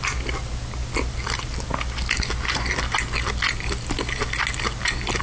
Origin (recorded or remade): recorded